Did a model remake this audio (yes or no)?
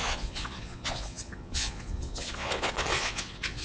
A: yes